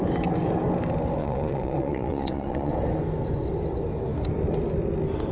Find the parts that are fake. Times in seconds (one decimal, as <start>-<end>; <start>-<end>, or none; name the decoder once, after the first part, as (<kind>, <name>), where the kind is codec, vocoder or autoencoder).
1.2-2.7 (vocoder, Vocos)